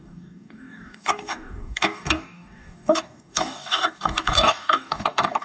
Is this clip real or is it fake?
fake